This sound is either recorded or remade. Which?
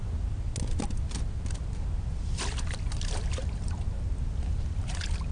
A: recorded